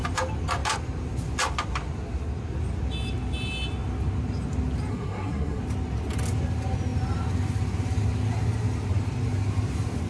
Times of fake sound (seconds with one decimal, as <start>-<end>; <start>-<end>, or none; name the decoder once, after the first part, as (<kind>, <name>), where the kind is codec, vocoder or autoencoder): 4.9-5.6 (codec, SNAC)